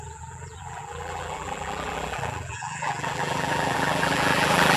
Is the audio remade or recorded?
remade